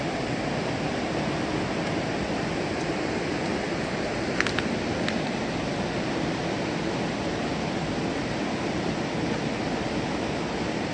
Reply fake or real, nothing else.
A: real